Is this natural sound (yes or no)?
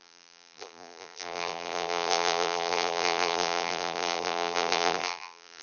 no